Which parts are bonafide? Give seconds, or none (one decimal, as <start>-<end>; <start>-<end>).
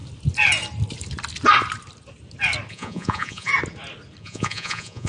0.0-2.7; 3.5-4.2